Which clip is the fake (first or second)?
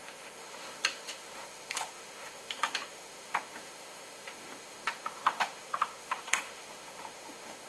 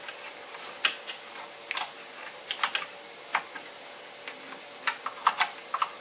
first